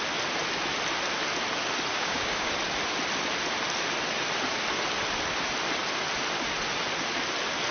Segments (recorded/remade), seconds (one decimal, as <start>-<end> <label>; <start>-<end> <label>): 0.0-1.9 recorded; 1.9-2.5 remade; 2.5-7.7 recorded